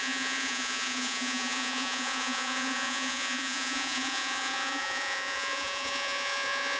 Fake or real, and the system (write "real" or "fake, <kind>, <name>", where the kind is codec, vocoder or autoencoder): fake, vocoder, Vocos